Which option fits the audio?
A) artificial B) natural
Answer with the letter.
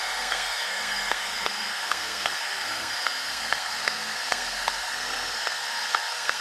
A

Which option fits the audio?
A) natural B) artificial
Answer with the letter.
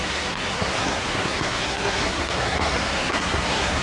B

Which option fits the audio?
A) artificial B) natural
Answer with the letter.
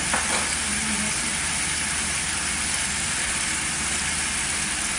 B